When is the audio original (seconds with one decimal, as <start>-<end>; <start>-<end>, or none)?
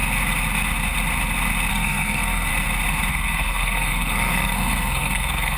0.0-1.7; 2.5-3.1